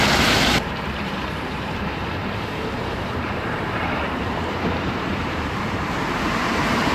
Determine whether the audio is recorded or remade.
remade